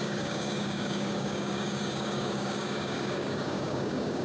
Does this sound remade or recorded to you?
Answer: remade